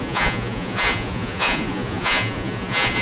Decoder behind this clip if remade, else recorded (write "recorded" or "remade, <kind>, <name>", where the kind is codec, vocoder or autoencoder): remade, vocoder, Vocos